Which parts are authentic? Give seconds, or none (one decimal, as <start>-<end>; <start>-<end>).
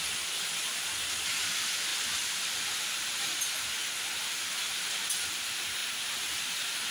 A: 0.0-6.9